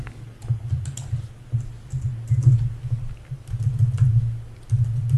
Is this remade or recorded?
recorded